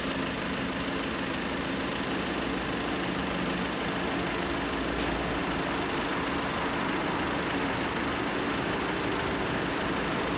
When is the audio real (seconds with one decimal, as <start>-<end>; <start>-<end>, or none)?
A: 0.0-10.4